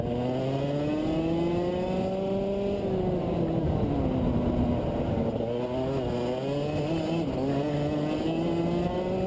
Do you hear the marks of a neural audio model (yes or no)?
no